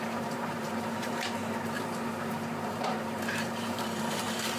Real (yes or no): no